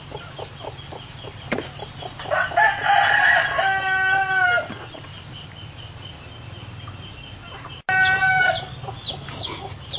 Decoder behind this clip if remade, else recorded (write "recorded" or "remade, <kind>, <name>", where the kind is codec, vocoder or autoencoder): recorded